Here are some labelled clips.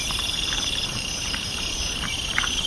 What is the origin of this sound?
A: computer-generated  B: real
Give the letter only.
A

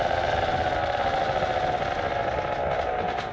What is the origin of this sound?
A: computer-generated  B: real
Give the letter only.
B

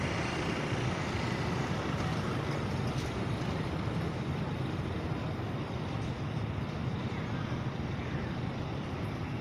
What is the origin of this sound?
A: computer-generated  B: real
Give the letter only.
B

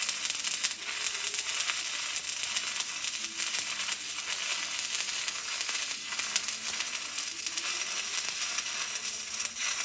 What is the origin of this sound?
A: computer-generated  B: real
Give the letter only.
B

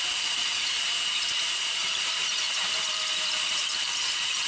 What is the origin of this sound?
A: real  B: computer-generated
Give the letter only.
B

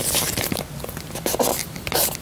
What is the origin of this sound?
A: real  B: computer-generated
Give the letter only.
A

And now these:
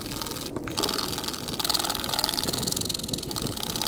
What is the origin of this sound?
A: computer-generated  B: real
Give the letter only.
B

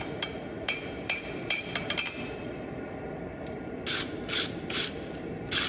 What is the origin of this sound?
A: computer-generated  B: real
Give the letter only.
A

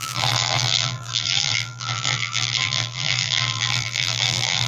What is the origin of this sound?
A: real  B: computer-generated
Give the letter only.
B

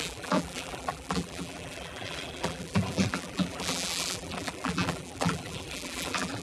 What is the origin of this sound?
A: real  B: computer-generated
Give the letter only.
B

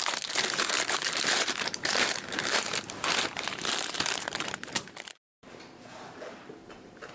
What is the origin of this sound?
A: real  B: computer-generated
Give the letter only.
B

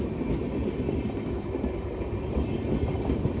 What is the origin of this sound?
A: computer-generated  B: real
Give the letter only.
A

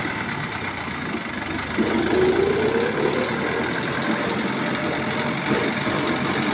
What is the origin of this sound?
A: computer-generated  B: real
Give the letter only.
A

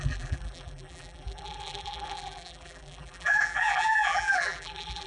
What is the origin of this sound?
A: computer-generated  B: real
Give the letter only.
A